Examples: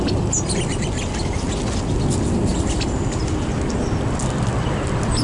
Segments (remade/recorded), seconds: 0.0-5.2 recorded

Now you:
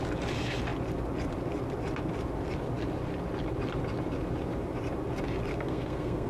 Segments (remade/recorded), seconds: 0.0-5.5 recorded; 5.5-6.3 remade

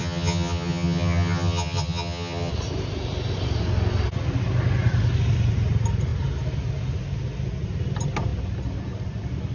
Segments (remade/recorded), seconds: 0.0-2.5 remade; 2.5-9.5 recorded

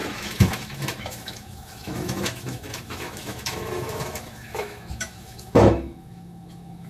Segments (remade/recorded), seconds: 0.0-6.9 remade